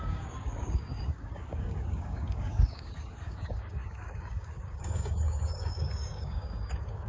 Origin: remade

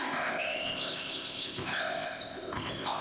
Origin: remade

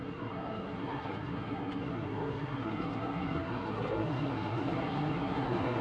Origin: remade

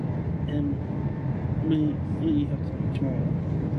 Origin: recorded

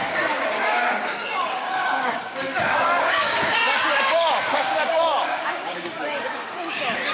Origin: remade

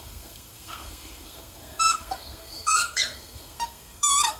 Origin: remade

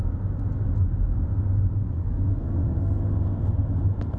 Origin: recorded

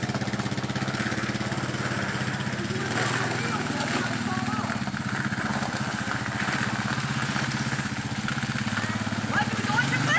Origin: recorded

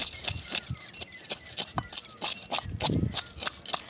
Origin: recorded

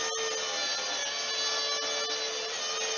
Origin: recorded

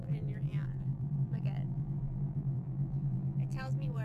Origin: remade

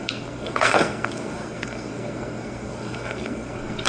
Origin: remade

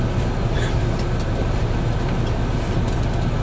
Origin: recorded